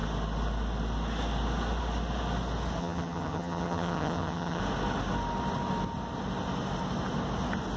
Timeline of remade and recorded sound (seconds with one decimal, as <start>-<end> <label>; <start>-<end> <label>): 0.0-2.8 recorded; 2.8-4.6 remade; 4.6-7.8 recorded